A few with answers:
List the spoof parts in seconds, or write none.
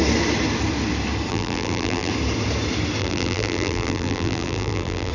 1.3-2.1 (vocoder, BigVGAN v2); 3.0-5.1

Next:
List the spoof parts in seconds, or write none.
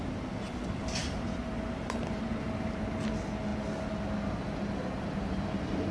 1.0-2.3 (vocoder, BigVGAN v2)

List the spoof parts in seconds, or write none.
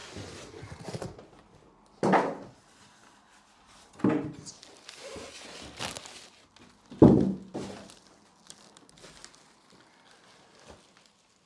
none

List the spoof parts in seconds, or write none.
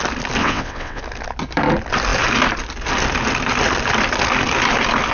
0.4-1.0 (vocoder, WaveNeXt)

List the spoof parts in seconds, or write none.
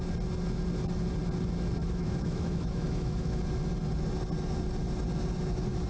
1.8-3.4 (autoencoder, DAC-VAE)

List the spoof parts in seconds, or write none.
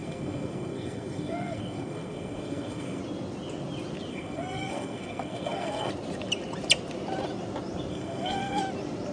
0.0-3.0 (codec, SNAC); 4.1-5.9; 7.9-8.6